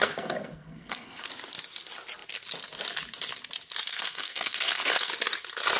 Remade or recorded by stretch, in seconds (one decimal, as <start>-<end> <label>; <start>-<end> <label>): 0.0-1.3 remade; 1.3-3.9 recorded; 3.9-5.1 remade; 5.1-5.8 recorded